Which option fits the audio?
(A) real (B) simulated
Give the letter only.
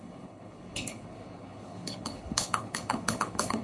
B